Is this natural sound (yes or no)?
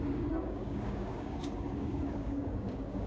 no